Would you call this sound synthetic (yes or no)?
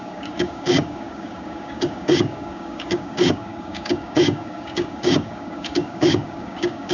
yes